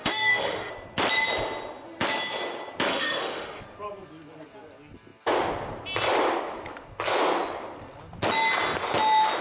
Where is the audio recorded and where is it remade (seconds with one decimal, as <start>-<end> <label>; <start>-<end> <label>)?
0.0-0.7 remade; 0.7-2.9 recorded; 2.9-3.6 remade; 3.6-9.4 recorded